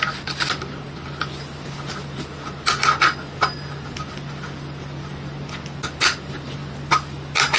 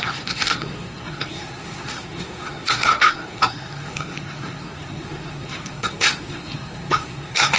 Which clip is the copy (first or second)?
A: second